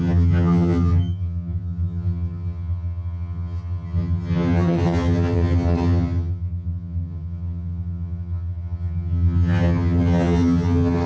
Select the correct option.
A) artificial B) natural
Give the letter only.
A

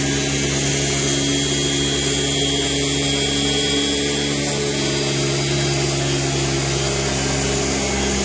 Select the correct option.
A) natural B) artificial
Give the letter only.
A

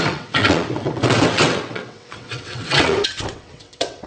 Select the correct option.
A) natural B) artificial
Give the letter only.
B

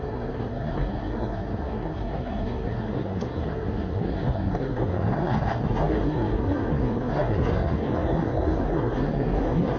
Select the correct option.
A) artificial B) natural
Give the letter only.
A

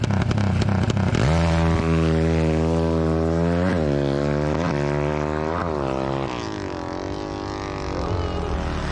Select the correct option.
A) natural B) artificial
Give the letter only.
A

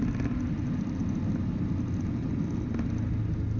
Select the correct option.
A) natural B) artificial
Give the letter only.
A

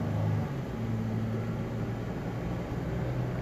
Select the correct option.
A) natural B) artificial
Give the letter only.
A